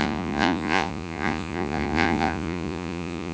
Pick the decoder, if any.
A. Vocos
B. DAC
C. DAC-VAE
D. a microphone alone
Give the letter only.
A